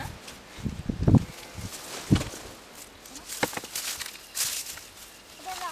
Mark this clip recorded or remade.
recorded